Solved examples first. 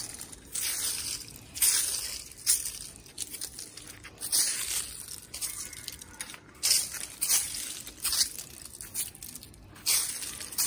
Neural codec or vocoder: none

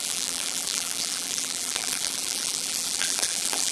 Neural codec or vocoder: vocoder, BigVGAN v2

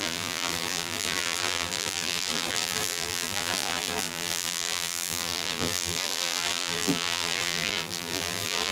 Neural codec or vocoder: vocoder, BigVGAN v2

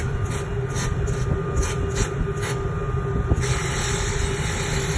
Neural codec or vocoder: none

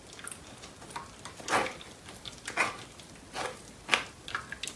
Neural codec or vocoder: none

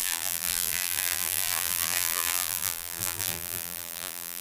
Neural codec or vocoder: vocoder, BigVGAN v2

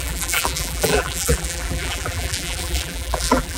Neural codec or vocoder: vocoder, BigVGAN v2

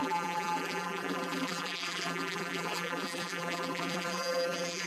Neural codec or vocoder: vocoder, BigVGAN v2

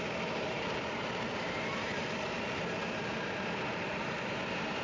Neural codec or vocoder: vocoder, BigVGAN v2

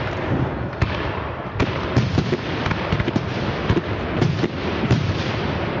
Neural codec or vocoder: vocoder, BigVGAN v2